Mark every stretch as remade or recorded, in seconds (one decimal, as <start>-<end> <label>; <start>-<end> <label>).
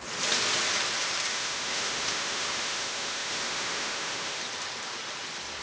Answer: 0.0-1.3 recorded; 1.3-4.4 remade; 4.4-5.6 recorded